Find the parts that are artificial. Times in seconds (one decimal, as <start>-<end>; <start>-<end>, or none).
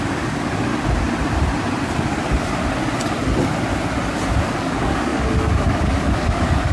0.0-0.7; 4.4-6.7